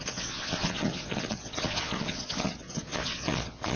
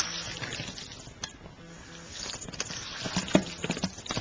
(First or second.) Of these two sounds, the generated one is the first